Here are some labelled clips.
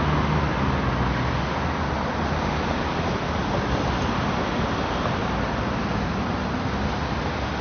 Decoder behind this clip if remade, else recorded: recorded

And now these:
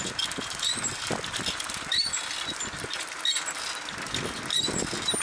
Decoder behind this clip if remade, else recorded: recorded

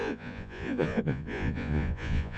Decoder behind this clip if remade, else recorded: remade, vocoder, Vocos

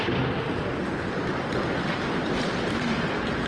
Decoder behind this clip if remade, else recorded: recorded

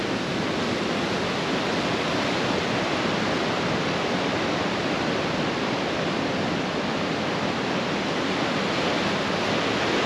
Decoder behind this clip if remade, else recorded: recorded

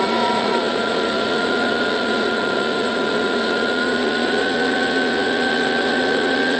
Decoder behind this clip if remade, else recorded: remade, vocoder, Vocos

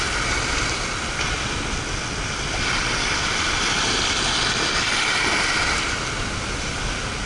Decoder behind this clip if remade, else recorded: recorded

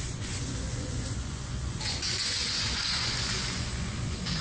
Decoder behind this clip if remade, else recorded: remade, vocoder, Vocos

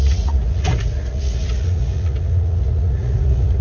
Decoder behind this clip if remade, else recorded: remade, vocoder, Vocos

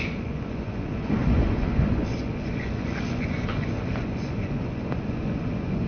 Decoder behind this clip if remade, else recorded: remade, vocoder, Vocos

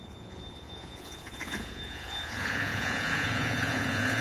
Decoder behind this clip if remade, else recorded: remade, vocoder, Vocos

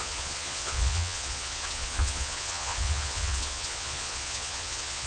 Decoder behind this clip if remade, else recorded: remade, vocoder, Vocos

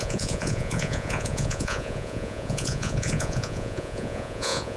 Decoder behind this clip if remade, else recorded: remade, vocoder, Vocos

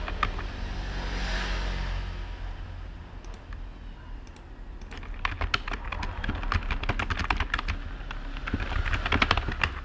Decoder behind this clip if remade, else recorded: recorded